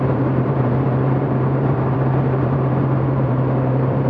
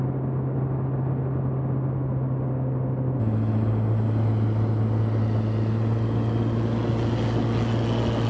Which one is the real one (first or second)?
second